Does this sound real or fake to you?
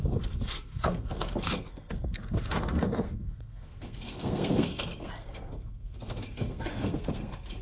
fake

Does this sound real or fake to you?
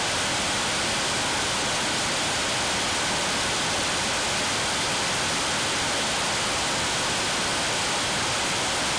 real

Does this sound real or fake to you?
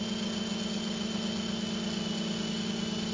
real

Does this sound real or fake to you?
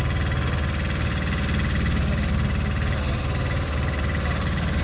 real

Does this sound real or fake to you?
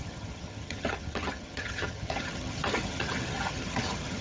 fake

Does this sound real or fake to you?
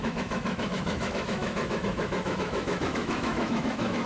fake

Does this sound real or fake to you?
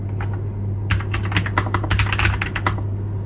real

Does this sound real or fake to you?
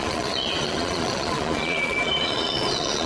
fake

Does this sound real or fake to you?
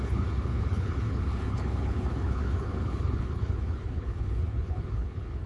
fake